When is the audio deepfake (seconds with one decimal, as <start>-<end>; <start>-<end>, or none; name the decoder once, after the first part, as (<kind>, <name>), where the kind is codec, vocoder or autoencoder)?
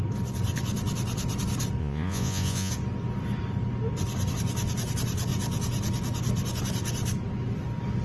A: 1.8-2.7 (vocoder, Vocos)